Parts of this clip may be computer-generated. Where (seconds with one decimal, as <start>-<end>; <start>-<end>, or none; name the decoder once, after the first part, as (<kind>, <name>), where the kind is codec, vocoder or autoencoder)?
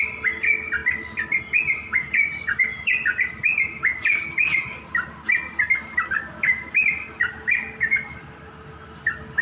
0.8-1.4 (vocoder, BigVGAN v2); 2.7-3.4